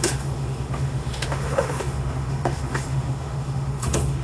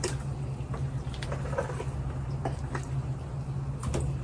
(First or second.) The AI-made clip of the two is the first